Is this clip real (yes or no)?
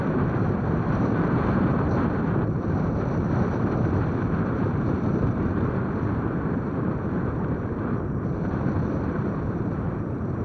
no